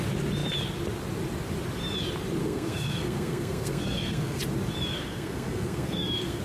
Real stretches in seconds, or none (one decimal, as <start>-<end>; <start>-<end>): 0.0-2.4; 4.4-4.9